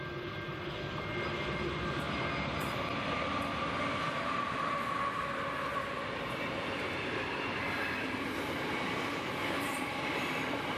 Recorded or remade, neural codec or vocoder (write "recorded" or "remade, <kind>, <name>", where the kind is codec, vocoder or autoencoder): recorded